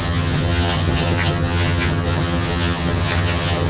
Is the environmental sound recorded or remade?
remade